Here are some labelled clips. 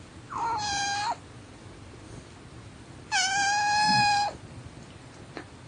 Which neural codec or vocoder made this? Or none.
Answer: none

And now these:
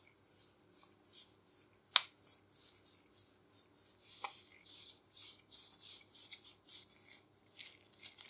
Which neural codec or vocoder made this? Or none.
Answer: none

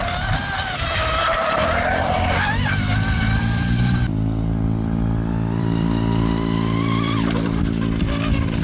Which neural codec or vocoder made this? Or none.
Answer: vocoder, BigVGAN v2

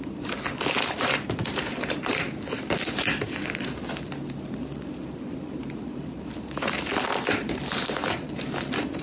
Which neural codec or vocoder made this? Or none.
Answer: vocoder, BigVGAN v2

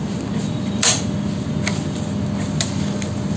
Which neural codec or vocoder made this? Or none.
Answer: none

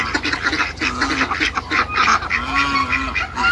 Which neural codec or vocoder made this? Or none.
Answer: none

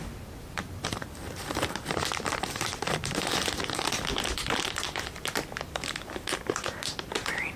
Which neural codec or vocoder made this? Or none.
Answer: vocoder, BigVGAN v2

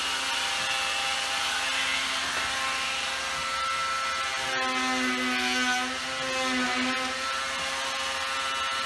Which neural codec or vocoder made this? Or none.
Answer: none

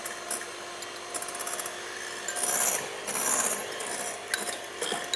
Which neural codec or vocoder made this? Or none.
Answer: none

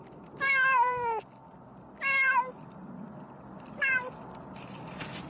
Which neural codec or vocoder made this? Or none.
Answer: vocoder, BigVGAN v2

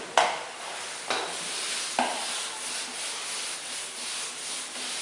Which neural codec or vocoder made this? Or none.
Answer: none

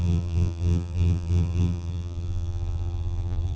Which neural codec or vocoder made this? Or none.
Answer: vocoder, BigVGAN v2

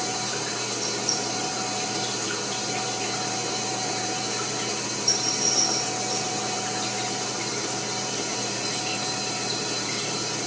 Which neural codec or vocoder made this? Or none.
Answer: vocoder, BigVGAN v2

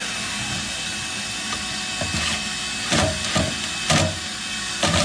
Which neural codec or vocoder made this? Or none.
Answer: none